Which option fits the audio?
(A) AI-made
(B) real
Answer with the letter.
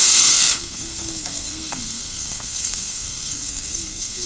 A